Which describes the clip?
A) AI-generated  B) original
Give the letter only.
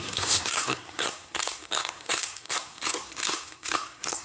A